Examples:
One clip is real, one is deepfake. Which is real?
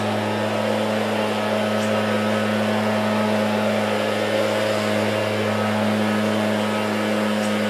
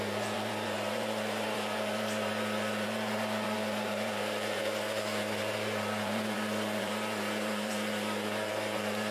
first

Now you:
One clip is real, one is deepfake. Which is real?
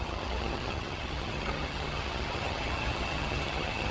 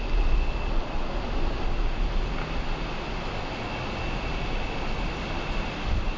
second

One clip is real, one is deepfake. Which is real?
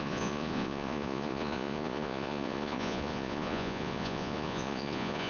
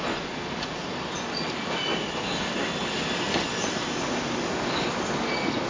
second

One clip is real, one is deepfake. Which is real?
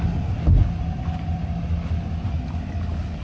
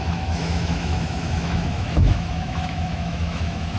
first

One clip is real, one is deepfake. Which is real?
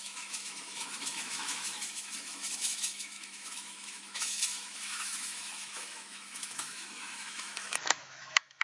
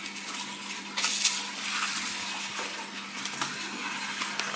second